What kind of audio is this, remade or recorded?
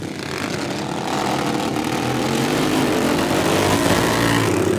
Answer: recorded